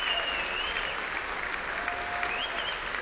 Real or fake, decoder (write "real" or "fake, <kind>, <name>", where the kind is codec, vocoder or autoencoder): real